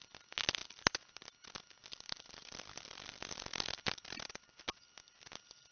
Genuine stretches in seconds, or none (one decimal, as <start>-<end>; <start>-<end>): 0.0-1.8; 5.2-5.7